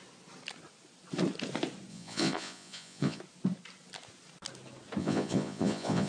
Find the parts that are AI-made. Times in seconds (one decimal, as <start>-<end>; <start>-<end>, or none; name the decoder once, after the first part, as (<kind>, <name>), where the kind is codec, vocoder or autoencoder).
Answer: 1.9-3.2 (vocoder, Vocos); 5.0-6.1